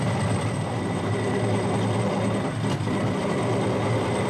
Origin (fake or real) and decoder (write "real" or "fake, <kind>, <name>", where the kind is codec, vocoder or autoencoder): real